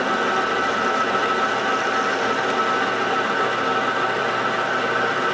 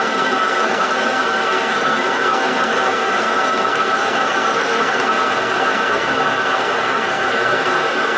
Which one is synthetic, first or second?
second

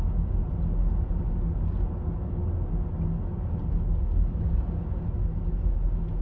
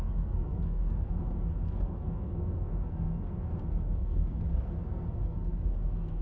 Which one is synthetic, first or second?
second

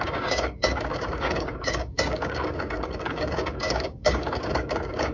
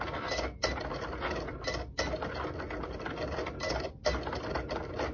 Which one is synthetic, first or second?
first